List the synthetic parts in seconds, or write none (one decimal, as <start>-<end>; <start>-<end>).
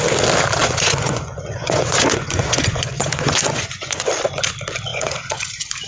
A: 0.6-4.1; 4.9-5.9